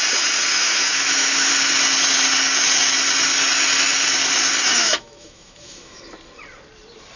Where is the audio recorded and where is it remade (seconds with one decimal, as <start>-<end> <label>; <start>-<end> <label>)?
0.0-0.5 recorded; 0.5-1.5 remade; 1.5-4.8 recorded; 4.8-6.0 remade; 6.0-7.2 recorded